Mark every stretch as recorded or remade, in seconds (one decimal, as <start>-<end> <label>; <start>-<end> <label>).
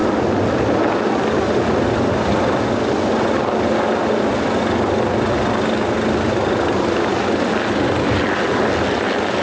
0.0-9.4 recorded